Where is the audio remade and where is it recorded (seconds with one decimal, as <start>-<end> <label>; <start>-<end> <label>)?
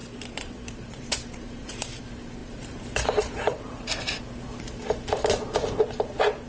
0.0-2.0 remade; 2.0-2.4 recorded; 2.4-4.2 remade; 4.2-6.5 recorded